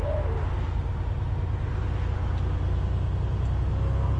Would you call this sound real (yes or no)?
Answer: yes